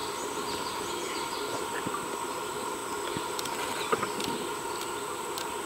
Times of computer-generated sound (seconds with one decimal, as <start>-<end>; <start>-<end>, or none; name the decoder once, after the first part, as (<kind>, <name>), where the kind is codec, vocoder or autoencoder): 1.6-2.8 (vocoder, BigVGAN v2); 5.3-5.7